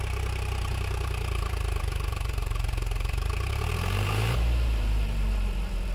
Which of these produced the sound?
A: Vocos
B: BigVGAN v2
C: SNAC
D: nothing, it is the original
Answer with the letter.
B